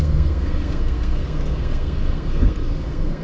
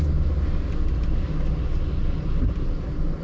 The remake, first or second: first